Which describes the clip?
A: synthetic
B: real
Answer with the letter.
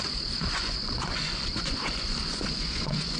A